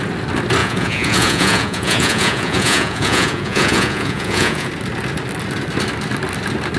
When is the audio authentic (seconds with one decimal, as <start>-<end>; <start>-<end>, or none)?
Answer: 0.0-0.6; 4.7-6.8